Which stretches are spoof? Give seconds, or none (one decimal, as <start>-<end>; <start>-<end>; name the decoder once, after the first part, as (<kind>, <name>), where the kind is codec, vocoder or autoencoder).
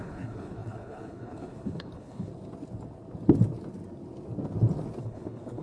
0.0-2.3 (codec, HILCodec); 5.0-5.6